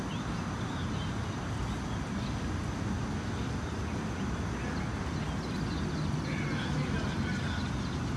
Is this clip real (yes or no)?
yes